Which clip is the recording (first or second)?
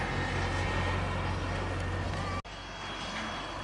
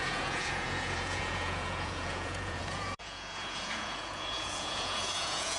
first